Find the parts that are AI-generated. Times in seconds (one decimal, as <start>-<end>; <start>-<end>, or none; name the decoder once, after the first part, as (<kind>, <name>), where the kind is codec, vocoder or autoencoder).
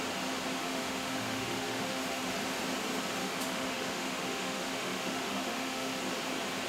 0.6-2.2 (autoencoder, DAC-VAE); 3.2-6.0